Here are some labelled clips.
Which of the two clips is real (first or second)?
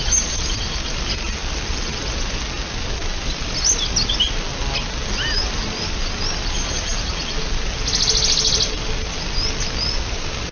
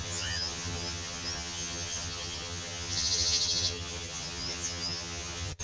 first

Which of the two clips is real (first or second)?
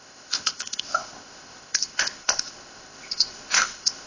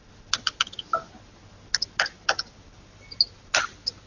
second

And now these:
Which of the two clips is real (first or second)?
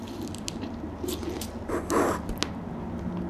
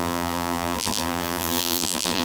first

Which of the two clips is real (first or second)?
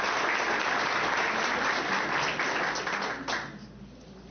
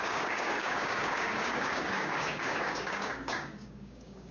first